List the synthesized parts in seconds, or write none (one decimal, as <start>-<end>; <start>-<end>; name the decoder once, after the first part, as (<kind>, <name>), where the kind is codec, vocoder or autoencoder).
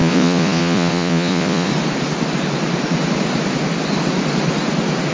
0.0-1.7 (vocoder, Vocos)